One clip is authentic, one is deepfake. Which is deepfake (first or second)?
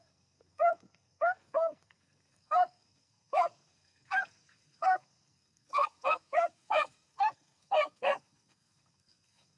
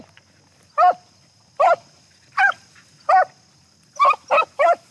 first